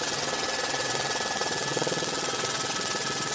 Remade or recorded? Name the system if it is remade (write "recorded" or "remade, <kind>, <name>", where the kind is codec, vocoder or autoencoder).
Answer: remade, vocoder, WaveNeXt